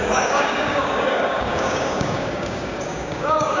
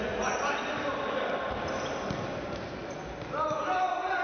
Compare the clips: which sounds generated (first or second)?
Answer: first